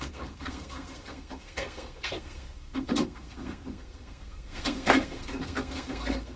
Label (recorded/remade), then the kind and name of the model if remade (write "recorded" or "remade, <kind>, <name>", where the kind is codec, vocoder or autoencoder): remade, codec, SNAC